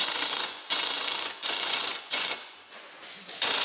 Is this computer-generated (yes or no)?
yes